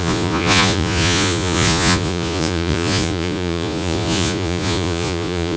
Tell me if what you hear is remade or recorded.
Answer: remade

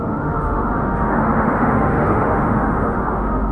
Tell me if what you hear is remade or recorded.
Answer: remade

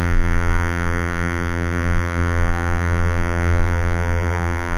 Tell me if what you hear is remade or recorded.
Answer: remade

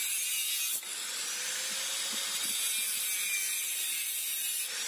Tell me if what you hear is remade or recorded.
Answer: recorded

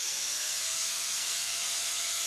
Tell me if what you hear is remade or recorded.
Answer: remade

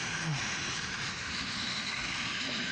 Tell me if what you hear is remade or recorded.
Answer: remade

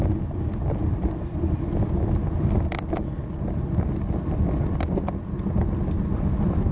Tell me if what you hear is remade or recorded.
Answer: recorded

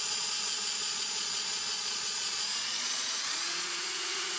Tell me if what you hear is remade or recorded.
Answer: remade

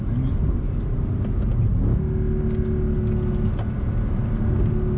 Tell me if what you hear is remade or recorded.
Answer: recorded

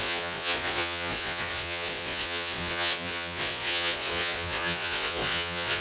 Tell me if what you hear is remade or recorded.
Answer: remade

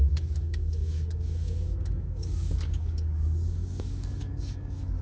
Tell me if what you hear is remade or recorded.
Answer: remade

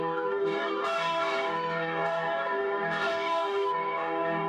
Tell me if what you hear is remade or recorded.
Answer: remade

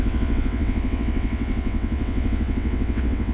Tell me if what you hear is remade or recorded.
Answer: remade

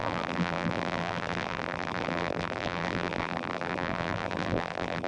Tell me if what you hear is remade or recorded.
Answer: remade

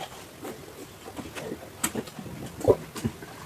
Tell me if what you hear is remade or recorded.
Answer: recorded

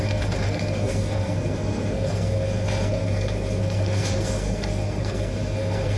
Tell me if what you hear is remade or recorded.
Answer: remade